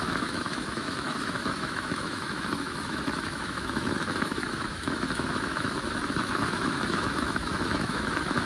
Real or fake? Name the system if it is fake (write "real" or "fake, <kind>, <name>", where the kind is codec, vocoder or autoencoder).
fake, autoencoder, DAC-VAE